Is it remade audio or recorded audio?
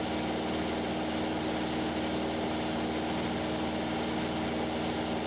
recorded